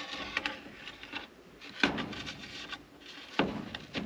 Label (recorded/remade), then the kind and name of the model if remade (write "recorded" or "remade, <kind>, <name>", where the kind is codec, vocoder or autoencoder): recorded